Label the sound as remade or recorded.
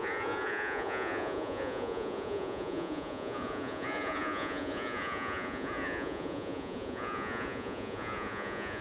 remade